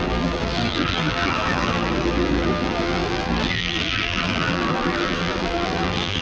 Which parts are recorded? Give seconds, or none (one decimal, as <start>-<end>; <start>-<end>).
none